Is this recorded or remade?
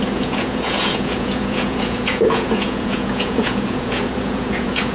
remade